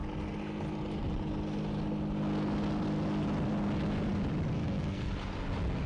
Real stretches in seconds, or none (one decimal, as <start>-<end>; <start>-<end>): 0.0-4.6; 5.1-5.9